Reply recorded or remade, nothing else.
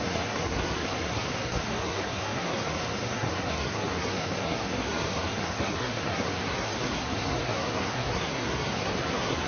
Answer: remade